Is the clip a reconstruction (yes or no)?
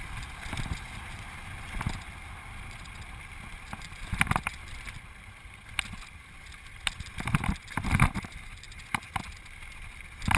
no